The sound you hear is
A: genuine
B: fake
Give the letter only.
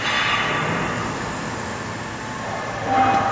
A